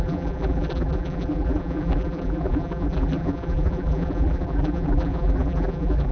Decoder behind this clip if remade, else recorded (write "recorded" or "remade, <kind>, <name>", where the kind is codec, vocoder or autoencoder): remade, vocoder, BigVGAN v2